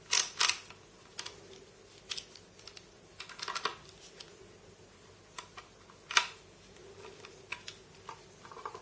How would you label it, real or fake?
real